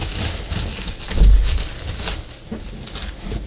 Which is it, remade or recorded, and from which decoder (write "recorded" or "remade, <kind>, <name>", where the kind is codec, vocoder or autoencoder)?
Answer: recorded